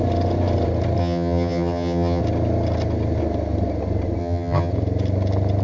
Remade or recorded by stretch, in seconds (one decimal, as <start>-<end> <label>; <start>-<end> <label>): 0.0-1.0 recorded; 1.0-2.2 remade; 2.2-4.2 recorded; 4.2-4.7 remade; 4.7-5.6 recorded